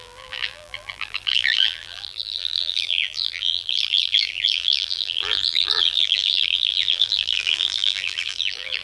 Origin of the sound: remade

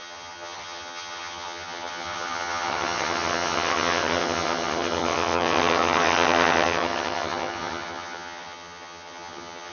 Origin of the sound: remade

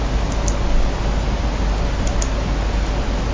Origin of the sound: recorded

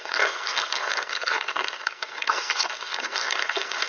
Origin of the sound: remade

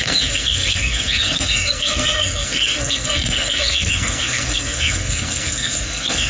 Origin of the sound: remade